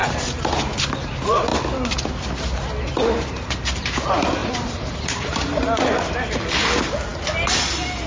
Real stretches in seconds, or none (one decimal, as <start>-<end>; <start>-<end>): 0.6-4.4; 5.8-8.1